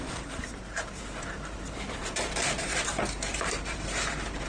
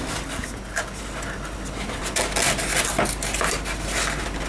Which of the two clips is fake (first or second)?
first